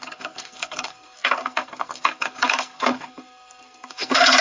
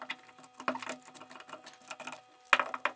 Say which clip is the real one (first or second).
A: second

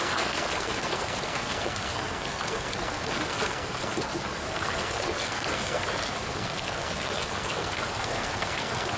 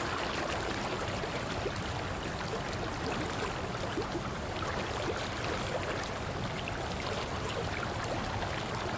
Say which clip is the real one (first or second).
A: second